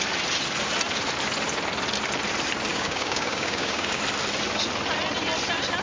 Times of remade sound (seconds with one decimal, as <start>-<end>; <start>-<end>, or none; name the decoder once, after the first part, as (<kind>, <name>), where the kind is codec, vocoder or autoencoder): 2.7-4.0 (codec, DAC)